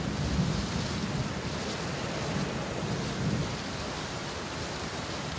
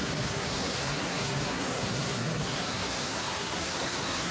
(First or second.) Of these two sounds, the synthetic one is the second